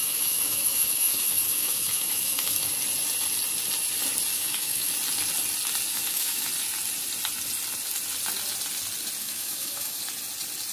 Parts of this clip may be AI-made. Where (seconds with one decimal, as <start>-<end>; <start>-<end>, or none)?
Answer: 0.0-2.7; 4.3-4.9; 5.9-6.5; 9.2-10.0